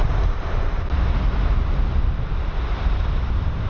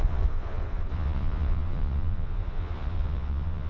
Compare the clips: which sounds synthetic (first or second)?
second